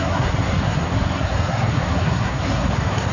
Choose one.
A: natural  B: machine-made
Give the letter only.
B